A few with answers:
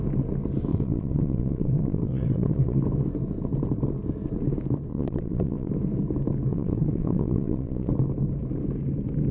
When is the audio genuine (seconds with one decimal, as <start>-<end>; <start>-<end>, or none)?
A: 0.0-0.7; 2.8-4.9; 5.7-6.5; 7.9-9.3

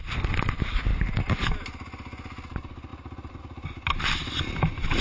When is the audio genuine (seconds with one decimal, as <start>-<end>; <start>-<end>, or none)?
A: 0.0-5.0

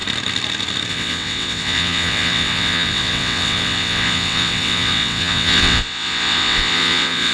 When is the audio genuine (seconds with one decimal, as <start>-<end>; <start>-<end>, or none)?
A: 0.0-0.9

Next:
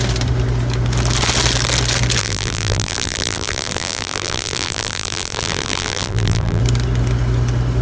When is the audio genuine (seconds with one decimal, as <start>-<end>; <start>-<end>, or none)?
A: 0.0-2.2; 6.6-7.8